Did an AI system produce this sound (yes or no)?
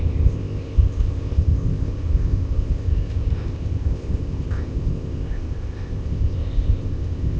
yes